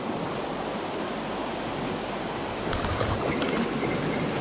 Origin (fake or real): real